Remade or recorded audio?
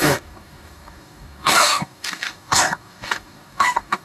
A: remade